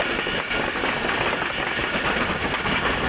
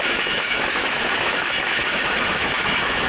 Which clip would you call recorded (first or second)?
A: first